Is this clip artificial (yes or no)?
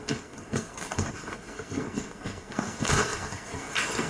yes